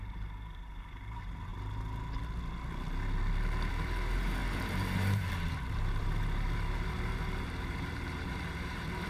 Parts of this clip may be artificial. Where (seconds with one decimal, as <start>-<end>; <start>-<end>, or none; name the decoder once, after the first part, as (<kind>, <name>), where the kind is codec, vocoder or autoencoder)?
0.0-1.5 (vocoder, BigVGAN v2); 3.7-9.1